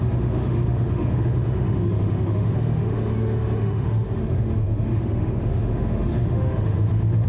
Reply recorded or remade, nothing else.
remade